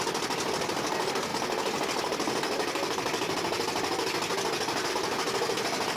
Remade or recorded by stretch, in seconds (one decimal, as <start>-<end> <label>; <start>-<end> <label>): 0.0-6.0 recorded